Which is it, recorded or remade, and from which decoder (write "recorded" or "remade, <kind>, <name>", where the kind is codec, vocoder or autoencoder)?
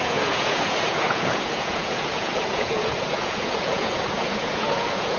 remade, vocoder, Vocos